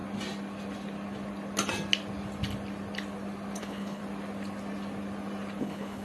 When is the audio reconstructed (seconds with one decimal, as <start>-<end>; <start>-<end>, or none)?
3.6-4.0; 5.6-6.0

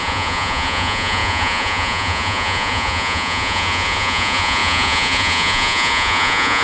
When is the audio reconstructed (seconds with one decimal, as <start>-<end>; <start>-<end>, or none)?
0.0-6.6

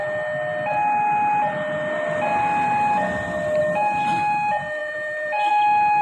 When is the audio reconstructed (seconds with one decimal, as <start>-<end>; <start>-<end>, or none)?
4.8-5.5

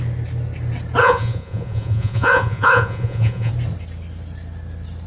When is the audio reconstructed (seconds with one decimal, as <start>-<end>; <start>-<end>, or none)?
1.0-3.5